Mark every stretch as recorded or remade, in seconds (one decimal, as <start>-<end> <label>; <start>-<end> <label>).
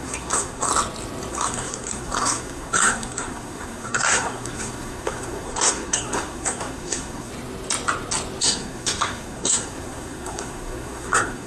0.0-0.7 remade; 0.7-1.3 recorded; 1.3-7.3 remade; 7.3-8.4 recorded; 8.4-11.5 remade